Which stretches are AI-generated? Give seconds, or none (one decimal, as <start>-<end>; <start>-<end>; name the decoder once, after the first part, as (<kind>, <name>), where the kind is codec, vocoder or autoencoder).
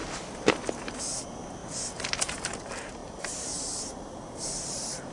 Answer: 1.6-2.6 (vocoder, BigVGAN v2); 3.0-5.1